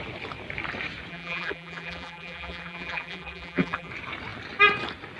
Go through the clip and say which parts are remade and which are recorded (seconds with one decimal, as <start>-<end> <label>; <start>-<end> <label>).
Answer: 0.0-1.1 recorded; 1.1-3.9 remade; 3.9-5.2 recorded